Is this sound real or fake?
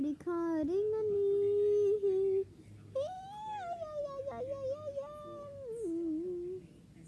real